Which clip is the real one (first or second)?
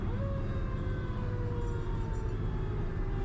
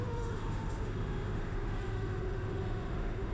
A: first